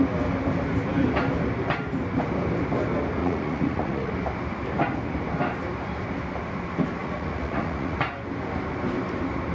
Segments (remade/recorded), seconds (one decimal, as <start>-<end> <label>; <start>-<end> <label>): 0.0-3.2 recorded; 3.2-4.1 remade; 4.1-7.0 recorded; 7.0-8.0 remade; 8.0-9.5 recorded